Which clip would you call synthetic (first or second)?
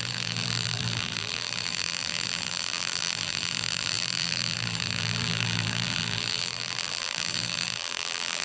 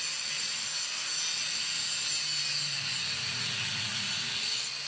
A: first